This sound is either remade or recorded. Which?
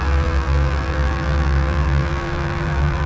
remade